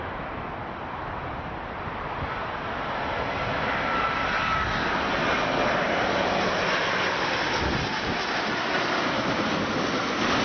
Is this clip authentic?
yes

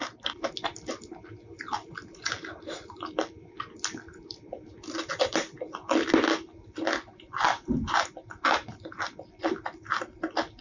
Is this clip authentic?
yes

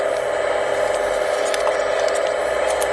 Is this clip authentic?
yes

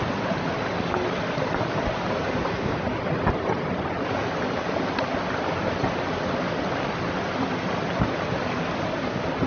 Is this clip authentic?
yes